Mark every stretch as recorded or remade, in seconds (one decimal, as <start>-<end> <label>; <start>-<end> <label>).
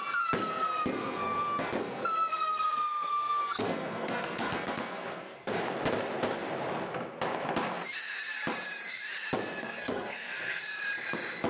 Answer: 0.0-0.5 recorded; 0.5-5.6 remade; 5.6-9.6 recorded; 9.6-10.6 remade; 10.6-11.5 recorded